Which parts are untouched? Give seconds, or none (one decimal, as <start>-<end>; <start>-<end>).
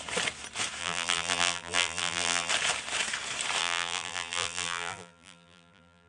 0.0-0.8; 2.5-3.6